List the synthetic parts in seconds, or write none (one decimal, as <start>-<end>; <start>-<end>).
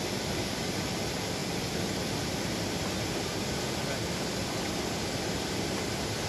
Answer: none